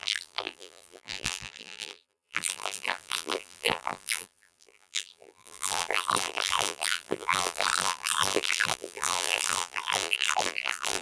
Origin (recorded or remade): remade